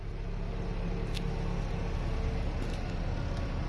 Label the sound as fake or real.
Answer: real